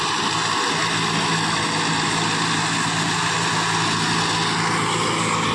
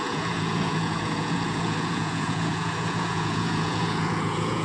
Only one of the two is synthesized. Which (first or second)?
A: second